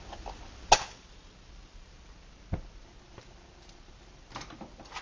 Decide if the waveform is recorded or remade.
recorded